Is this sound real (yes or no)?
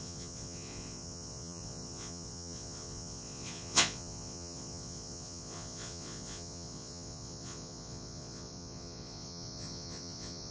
no